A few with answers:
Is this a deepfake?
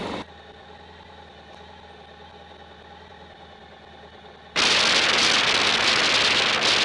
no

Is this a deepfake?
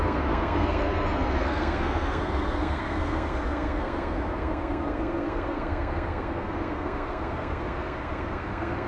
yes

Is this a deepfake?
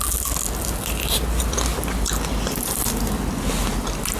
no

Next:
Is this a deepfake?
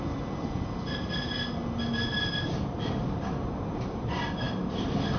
no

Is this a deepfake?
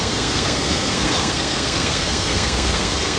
yes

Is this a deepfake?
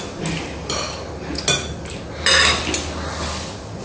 no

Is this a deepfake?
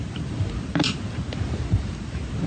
no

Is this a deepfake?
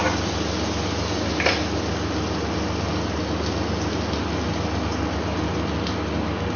no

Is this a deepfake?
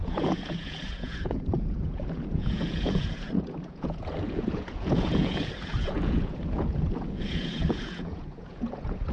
yes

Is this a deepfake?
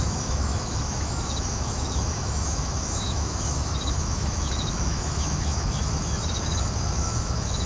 yes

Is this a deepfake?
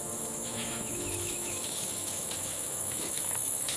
yes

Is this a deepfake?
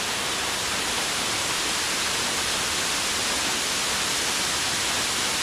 no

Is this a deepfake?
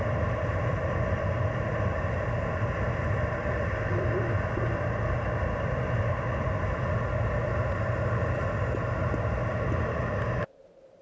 no